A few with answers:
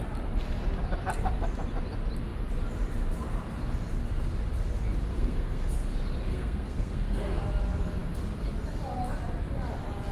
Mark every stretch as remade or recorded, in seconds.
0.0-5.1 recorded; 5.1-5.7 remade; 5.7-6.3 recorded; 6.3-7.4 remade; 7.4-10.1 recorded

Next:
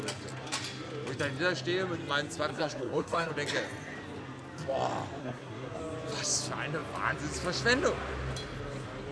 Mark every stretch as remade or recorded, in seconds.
0.0-2.5 recorded; 2.5-3.3 remade; 3.3-5.2 recorded; 5.2-5.8 remade; 5.8-9.1 recorded

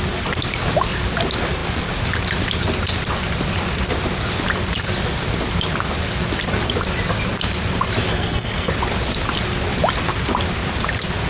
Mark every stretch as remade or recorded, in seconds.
0.0-8.1 recorded; 8.1-8.7 remade; 8.7-11.3 recorded

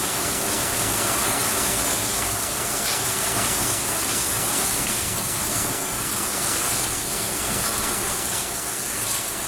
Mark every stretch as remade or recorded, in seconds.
0.0-9.5 remade